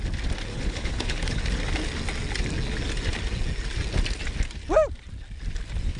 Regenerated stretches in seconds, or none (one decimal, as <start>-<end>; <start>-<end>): 0.5-1.4